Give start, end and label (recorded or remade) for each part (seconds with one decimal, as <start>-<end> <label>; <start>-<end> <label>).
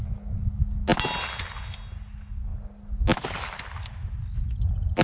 0.0-5.0 recorded